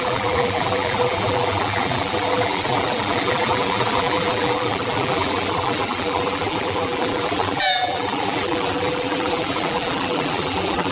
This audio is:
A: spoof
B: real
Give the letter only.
A